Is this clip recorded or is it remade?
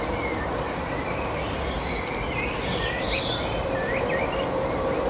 remade